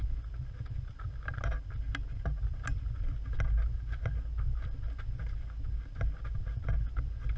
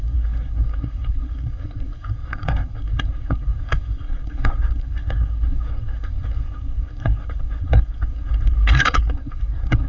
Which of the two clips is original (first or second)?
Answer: first